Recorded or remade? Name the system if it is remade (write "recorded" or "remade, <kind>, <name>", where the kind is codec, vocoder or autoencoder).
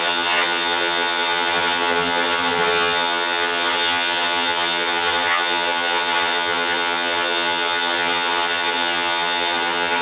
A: remade, vocoder, HiFi-GAN